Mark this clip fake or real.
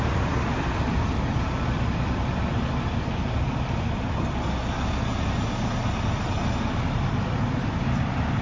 real